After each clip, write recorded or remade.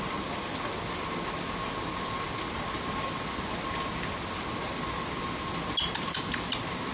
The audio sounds recorded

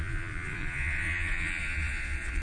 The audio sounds remade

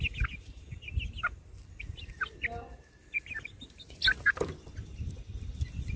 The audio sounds recorded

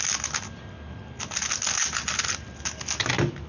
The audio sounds recorded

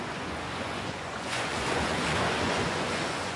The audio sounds remade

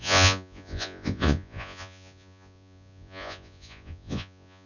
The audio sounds remade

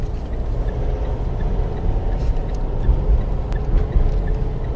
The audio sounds recorded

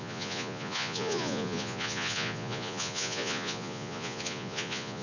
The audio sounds remade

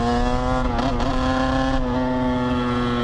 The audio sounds recorded